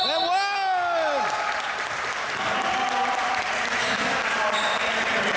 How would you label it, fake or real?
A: real